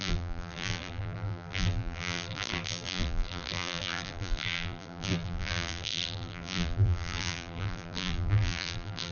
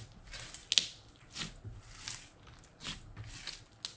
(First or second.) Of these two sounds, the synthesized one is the first